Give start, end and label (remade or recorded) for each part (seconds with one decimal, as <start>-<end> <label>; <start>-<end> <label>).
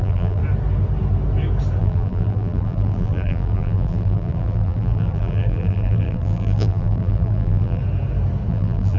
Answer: 0.0-0.4 remade; 0.4-1.8 recorded; 1.8-7.8 remade; 7.8-8.5 recorded; 8.5-9.0 remade